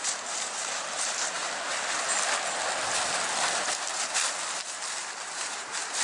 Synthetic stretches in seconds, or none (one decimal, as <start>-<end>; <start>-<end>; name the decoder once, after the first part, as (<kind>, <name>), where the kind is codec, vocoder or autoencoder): 0.0-1.4 (vocoder, BigVGAN v2); 5.0-6.0